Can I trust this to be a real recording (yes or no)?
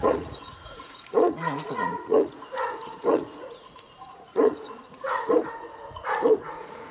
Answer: no